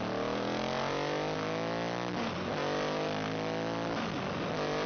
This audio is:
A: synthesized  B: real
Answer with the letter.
B